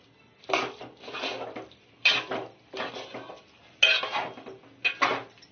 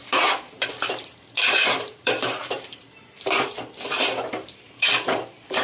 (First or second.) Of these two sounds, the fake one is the second